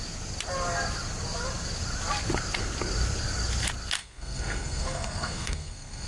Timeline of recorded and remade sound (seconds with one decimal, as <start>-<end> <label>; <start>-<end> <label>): 0.0-4.0 recorded; 4.0-6.1 remade